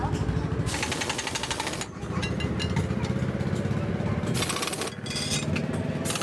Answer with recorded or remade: recorded